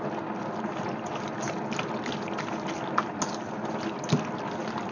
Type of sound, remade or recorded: recorded